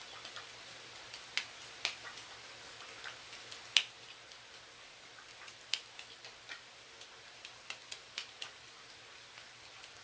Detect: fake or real real